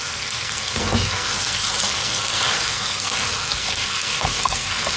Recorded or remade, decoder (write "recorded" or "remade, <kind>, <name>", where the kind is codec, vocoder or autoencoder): remade, codec, SNAC